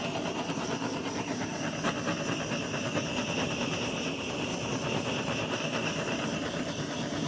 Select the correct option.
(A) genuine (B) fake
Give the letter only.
A